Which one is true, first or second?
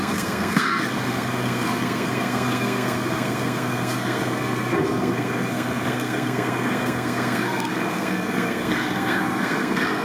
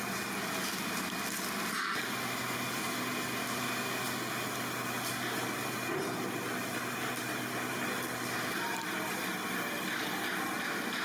second